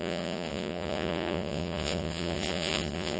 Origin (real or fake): fake